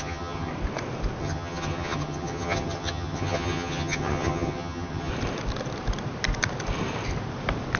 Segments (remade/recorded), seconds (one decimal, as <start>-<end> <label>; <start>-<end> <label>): 0.0-0.5 remade; 0.5-1.2 recorded; 1.2-5.1 remade; 5.1-7.8 recorded

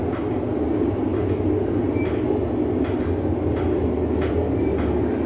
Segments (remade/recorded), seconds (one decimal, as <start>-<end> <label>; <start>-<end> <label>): 0.0-5.3 recorded